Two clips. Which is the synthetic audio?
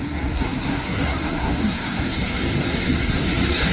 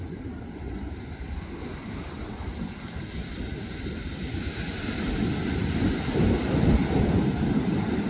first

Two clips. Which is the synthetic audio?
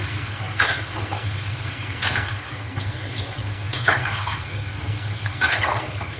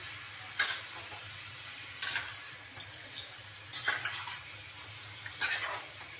first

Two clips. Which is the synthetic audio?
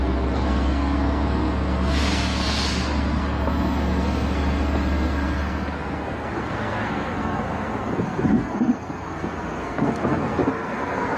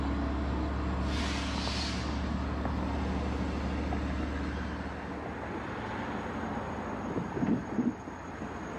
first